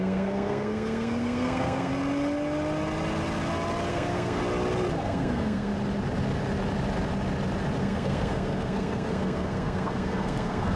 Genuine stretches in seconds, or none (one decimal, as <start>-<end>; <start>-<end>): 1.9-3.9; 4.4-5.0; 5.7-7.8